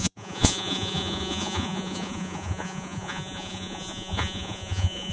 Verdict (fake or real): fake